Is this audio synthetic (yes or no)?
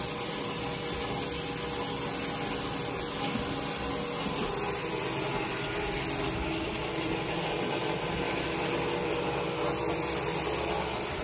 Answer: no